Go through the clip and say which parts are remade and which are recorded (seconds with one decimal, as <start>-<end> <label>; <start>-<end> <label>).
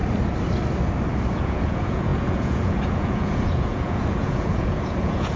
0.0-1.3 recorded; 1.3-5.4 remade